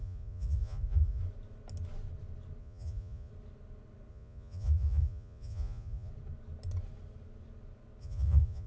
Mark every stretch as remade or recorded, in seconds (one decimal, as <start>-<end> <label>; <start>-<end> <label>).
0.0-1.2 remade; 1.2-2.6 recorded; 2.6-3.3 remade; 3.3-4.1 recorded; 4.1-6.1 remade; 6.1-8.0 recorded; 8.0-8.7 remade